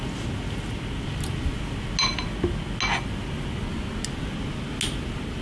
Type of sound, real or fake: real